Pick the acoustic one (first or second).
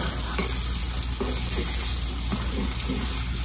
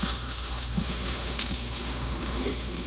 first